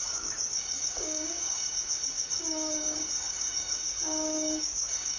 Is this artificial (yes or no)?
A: yes